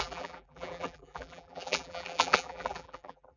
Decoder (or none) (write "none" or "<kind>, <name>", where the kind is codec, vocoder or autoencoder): vocoder, BigVGAN v2